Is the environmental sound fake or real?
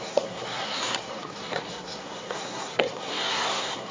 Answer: fake